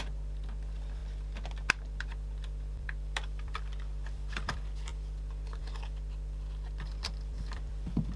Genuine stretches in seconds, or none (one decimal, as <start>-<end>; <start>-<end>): 1.0-1.7

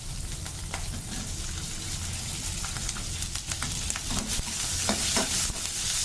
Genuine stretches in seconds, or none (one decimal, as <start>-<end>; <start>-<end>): 0.0-6.0

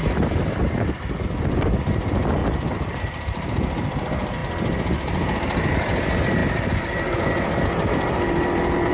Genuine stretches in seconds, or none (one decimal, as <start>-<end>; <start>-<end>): 4.4-5.7

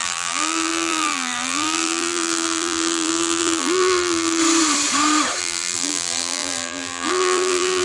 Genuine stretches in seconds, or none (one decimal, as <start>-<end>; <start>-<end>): 4.4-5.4